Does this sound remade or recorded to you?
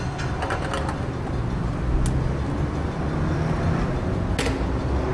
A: recorded